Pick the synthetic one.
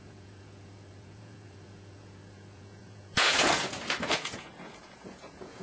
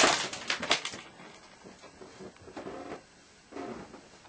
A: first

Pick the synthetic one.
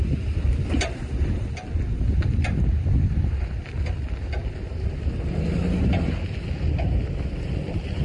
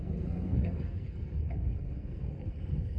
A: second